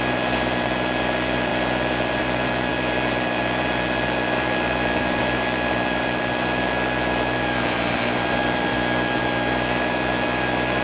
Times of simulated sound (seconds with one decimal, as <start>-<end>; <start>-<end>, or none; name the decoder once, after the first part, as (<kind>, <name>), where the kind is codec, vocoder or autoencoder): 0.0-10.8 (vocoder, BigVGAN v2)